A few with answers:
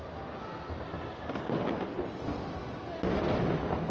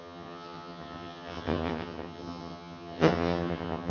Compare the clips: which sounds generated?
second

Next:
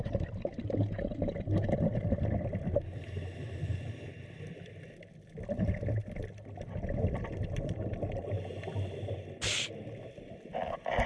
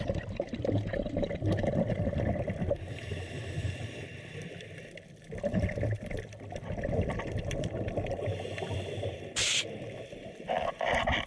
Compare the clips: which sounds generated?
second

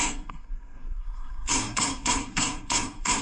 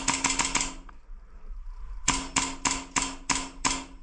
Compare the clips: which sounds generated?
first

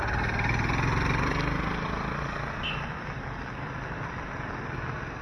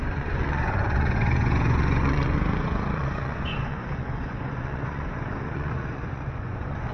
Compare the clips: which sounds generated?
second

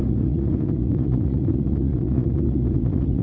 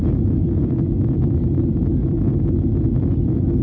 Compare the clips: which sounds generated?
first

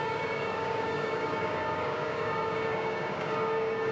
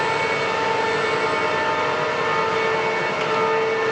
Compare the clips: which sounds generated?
first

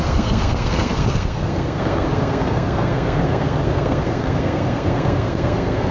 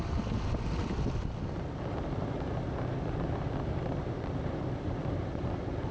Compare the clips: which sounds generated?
first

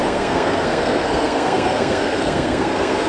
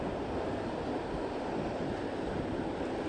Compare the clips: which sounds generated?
first